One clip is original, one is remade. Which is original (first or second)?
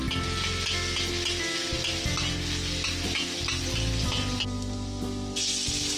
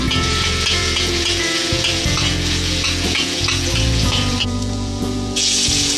first